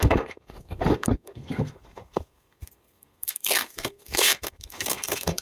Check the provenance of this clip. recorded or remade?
remade